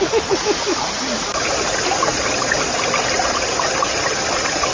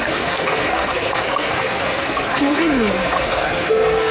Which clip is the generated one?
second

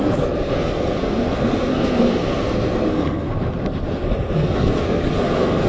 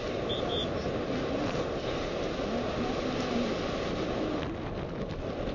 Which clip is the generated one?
first